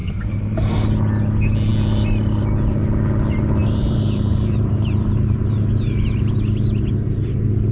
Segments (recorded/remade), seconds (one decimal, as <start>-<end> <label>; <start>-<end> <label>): 0.0-3.6 recorded; 3.6-6.3 remade; 6.3-7.7 recorded